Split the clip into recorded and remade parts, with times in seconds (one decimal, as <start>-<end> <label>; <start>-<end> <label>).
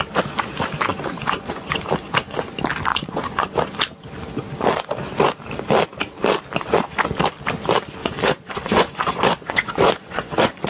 0.0-0.9 recorded; 0.9-1.8 remade; 1.8-2.9 recorded; 2.9-3.5 remade; 3.5-8.0 recorded; 8.0-10.7 remade